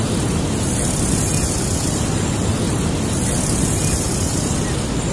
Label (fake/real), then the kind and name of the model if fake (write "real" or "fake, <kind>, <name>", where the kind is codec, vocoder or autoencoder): real